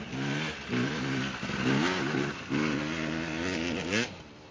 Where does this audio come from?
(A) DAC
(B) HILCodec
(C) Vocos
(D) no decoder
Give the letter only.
D